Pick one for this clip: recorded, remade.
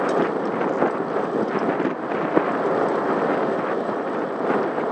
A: recorded